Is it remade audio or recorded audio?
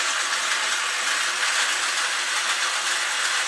recorded